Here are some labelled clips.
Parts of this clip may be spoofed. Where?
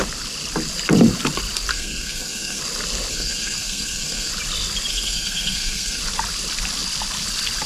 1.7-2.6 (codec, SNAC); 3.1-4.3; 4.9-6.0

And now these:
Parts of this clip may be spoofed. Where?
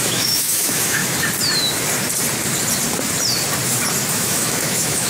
0.0-1.0 (autoencoder, DAC-VAE); 4.1-5.1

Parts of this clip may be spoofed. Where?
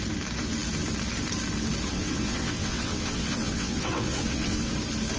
1.9-4.7 (vocoder, WaveNeXt)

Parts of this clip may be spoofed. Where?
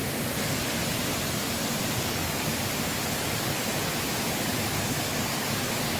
2.0-2.5 (codec, DAC); 3.1-3.7; 4.3-6.0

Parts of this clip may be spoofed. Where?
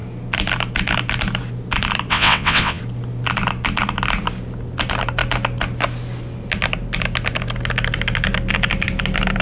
2.1-2.8 (vocoder, WaveNeXt)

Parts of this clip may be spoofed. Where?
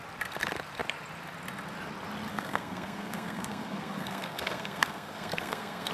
2.3-5.9 (codec, SNAC)